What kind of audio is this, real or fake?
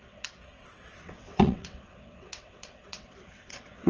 fake